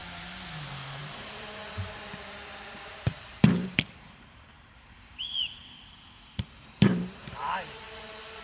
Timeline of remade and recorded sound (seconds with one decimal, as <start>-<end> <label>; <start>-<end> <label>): 0.0-1.0 recorded; 1.0-8.4 remade